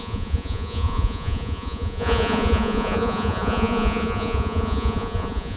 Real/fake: fake